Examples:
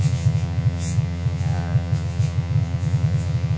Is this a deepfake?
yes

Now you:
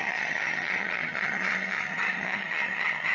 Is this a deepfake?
yes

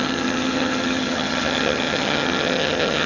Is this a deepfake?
yes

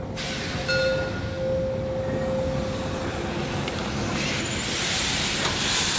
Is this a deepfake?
no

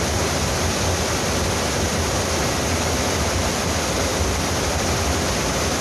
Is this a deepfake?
no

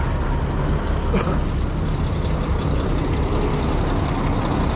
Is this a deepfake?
no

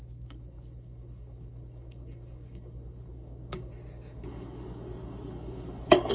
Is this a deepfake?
yes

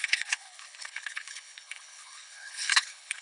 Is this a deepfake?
yes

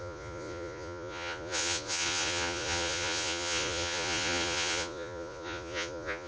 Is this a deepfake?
yes